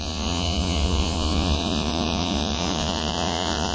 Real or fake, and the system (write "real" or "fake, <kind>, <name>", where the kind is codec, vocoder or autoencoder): fake, vocoder, Vocos